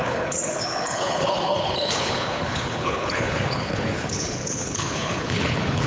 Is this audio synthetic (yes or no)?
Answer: yes